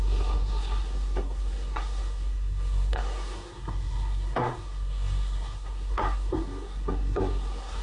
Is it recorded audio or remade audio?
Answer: remade